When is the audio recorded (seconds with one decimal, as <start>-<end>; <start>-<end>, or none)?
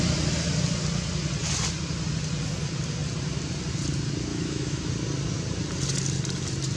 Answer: 0.0-4.3; 4.9-6.8